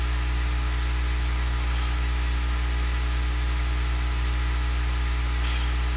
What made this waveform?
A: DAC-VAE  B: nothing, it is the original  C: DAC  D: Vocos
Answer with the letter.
B